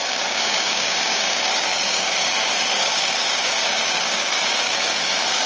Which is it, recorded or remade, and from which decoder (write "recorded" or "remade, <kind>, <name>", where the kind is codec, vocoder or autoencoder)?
remade, codec, DAC